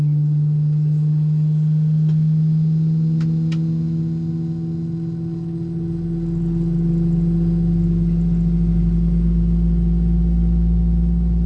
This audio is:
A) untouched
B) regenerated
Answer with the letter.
A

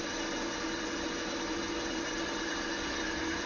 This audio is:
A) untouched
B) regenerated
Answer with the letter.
A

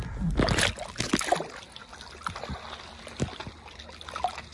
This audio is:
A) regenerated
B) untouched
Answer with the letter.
B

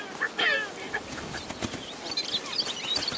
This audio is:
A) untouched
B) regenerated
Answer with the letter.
B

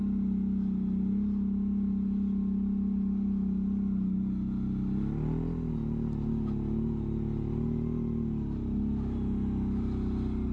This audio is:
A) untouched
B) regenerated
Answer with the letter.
A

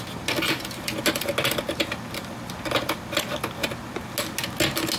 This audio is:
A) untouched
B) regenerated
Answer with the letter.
A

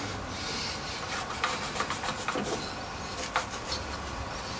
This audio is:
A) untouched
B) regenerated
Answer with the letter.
B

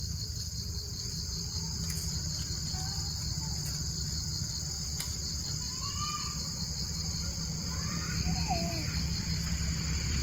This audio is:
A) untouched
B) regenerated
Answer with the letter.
B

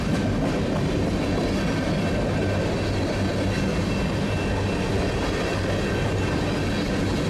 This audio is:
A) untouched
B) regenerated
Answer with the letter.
A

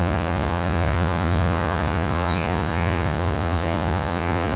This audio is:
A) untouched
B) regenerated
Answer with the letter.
B